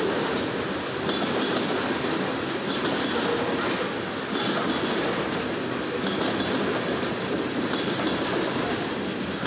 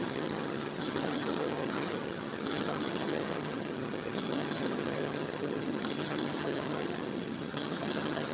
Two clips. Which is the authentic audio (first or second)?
first